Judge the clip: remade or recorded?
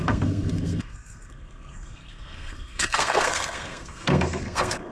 remade